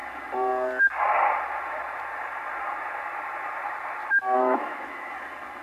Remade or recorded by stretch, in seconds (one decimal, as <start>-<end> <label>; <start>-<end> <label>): 0.0-4.0 recorded; 4.0-5.1 remade; 5.1-5.6 recorded